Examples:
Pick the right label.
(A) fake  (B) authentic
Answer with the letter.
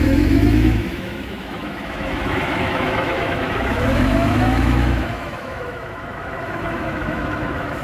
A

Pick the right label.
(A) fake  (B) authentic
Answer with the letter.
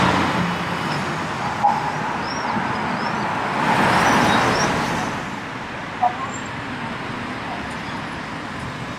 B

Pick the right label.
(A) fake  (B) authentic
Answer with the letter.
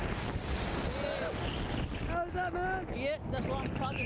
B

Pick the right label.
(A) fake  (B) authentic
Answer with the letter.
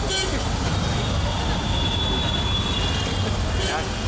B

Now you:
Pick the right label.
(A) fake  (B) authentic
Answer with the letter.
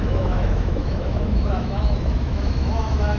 A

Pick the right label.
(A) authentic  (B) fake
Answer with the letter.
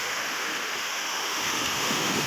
B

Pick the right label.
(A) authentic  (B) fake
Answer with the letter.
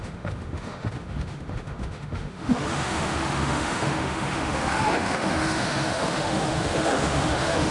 B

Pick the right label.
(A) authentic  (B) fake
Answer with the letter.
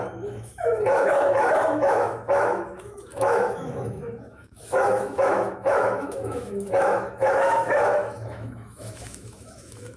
B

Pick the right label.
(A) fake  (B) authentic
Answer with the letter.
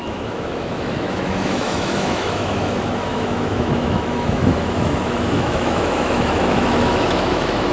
A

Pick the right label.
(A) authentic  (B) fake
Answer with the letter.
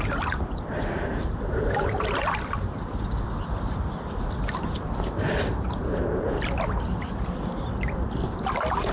A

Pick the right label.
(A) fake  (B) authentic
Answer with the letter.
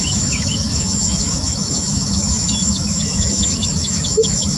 A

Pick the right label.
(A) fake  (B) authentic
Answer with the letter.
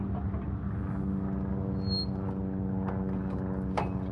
B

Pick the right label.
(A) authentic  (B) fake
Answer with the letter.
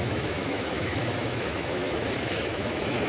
B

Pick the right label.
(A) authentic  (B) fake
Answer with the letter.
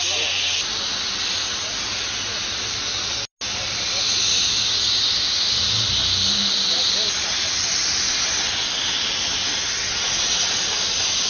A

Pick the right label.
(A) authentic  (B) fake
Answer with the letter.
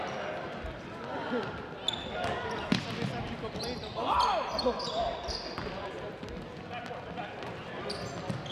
A